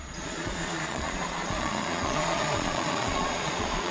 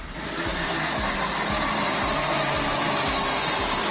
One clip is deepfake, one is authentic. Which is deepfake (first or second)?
first